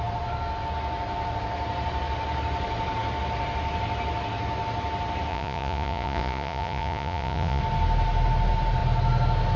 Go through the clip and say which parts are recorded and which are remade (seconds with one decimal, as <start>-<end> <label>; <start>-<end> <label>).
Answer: 0.0-5.3 recorded; 5.3-7.6 remade; 7.6-9.6 recorded